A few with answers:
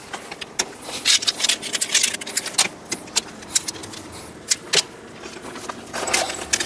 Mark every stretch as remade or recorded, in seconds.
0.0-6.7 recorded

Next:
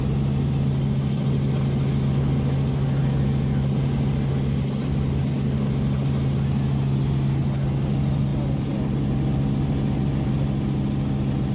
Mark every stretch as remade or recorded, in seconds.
0.0-11.5 recorded